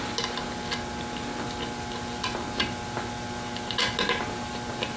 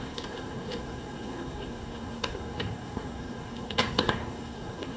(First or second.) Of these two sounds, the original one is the first